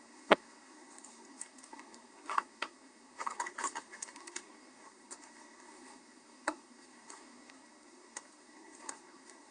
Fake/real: fake